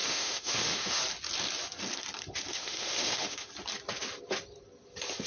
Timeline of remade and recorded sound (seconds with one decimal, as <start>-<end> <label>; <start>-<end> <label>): 0.0-1.0 remade; 1.0-2.5 recorded; 2.5-3.5 remade; 3.5-5.3 recorded

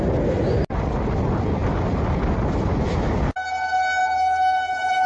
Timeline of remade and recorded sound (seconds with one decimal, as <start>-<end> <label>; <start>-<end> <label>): 0.0-4.0 recorded; 4.0-5.1 remade